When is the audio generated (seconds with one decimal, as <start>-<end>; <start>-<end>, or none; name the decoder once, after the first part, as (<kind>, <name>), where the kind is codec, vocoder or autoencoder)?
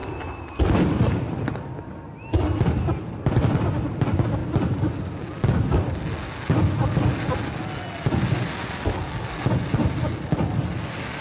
none